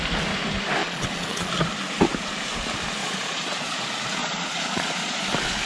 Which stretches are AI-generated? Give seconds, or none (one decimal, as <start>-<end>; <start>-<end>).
0.8-1.5; 3.0-3.8; 4.2-5.2